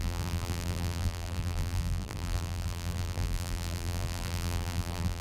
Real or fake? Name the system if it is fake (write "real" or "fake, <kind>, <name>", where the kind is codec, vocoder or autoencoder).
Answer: fake, vocoder, BigVGAN v2